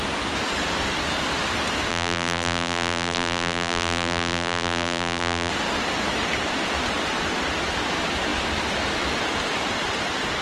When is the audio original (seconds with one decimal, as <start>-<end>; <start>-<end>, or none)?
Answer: 0.0-1.9; 5.5-10.4